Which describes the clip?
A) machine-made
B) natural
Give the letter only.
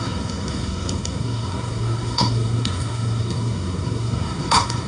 A